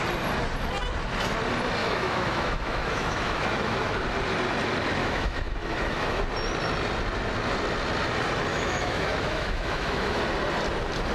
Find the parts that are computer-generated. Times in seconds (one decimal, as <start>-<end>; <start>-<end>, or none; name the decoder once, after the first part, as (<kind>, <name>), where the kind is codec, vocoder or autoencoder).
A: 1.8-3.9 (autoencoder, DAC-VAE); 5.0-6.2; 8.5-10.2